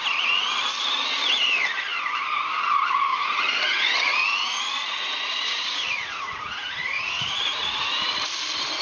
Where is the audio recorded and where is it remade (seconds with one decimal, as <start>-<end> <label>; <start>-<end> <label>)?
0.0-3.1 recorded; 3.1-8.0 remade; 8.0-8.8 recorded